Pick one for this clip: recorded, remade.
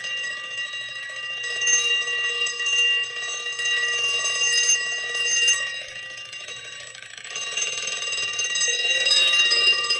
remade